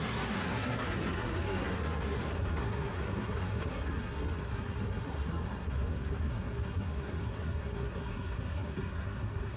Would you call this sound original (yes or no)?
no